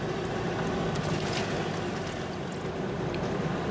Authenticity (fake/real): real